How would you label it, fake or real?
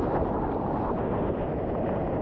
real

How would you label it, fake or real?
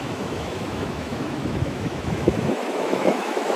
fake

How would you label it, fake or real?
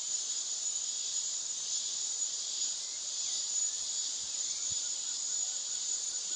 fake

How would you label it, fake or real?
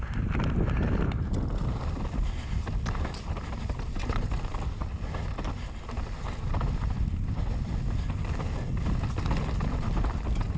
real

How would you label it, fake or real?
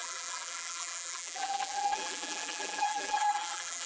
fake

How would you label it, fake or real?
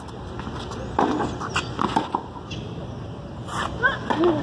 real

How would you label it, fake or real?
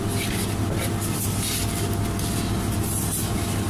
real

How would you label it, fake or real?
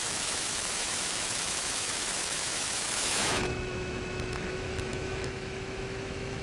fake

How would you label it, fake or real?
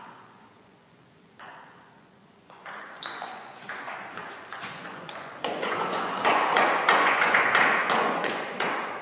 fake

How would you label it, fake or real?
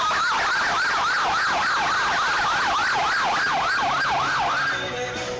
real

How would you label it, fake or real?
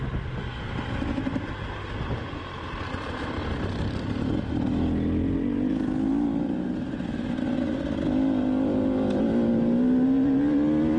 real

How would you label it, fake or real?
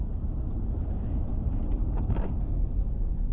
fake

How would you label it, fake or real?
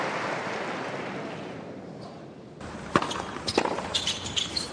real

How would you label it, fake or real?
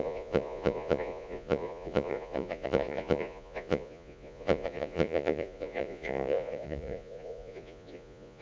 fake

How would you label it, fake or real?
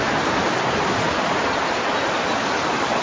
real